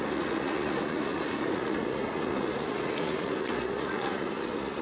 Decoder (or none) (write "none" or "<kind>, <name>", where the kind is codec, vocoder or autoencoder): vocoder, Vocos